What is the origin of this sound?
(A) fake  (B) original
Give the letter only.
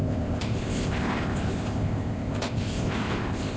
A